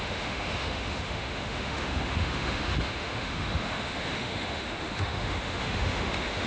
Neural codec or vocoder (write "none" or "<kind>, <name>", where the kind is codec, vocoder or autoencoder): autoencoder, DAC-VAE